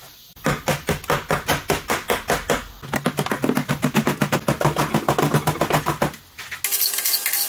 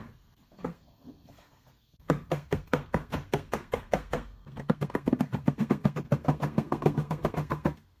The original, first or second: first